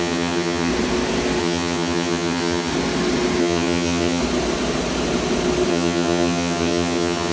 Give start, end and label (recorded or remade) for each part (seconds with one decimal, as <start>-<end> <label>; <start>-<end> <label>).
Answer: 0.0-0.7 remade; 0.7-1.4 recorded; 1.4-2.7 remade; 2.7-3.4 recorded; 3.4-4.2 remade; 4.2-5.7 recorded; 5.7-7.3 remade